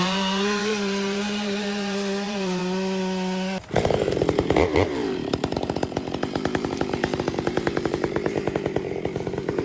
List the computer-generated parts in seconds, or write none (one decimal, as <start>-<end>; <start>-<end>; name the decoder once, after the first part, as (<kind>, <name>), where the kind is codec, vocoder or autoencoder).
0.0-2.6 (vocoder, BigVGAN v2); 3.7-9.6